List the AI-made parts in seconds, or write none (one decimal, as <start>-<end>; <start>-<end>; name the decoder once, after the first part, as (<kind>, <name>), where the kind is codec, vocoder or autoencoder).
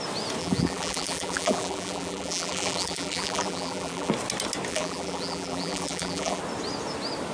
0.4-4.1 (vocoder, BigVGAN v2); 4.7-6.4